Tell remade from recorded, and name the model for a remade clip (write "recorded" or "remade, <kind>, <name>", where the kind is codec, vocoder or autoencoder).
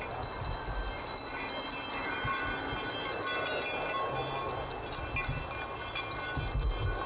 recorded